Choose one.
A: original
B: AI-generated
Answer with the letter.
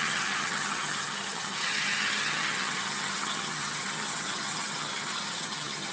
B